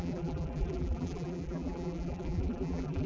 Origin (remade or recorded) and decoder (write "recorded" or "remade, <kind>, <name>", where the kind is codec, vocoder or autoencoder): remade, vocoder, BigVGAN v2